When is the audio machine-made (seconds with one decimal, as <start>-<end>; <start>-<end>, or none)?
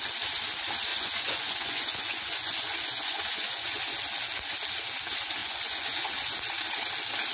0.9-3.8; 5.4-6.1